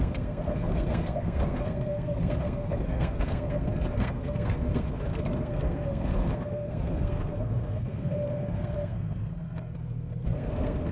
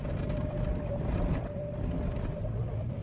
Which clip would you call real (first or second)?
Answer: second